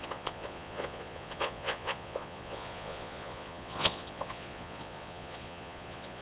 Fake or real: fake